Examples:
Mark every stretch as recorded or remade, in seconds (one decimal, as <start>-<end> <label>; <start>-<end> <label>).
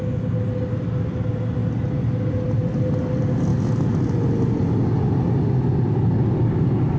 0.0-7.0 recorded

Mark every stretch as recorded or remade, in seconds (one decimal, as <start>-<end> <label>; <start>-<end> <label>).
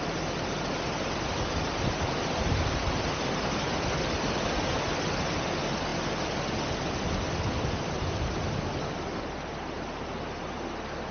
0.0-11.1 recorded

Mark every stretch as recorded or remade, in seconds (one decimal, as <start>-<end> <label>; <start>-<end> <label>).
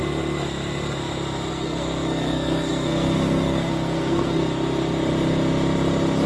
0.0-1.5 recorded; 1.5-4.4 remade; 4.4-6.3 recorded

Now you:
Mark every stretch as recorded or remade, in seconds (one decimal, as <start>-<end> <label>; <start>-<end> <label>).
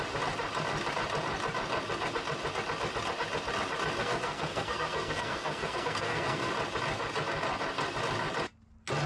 0.0-4.0 recorded; 4.0-6.5 remade; 6.5-9.1 recorded